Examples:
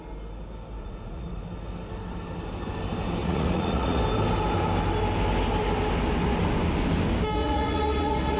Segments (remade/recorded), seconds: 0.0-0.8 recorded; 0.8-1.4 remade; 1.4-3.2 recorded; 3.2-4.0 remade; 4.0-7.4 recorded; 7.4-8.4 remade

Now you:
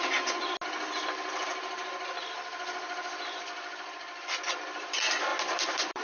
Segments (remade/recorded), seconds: 0.0-5.3 recorded; 5.3-6.0 remade

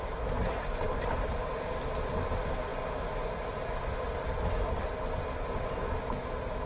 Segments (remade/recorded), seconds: 0.0-0.4 recorded; 0.4-1.8 remade; 1.8-6.7 recorded